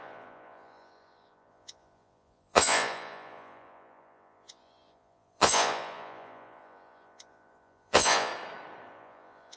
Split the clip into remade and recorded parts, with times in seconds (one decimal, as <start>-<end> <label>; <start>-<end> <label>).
0.0-8.3 remade; 8.3-8.9 recorded; 8.9-9.6 remade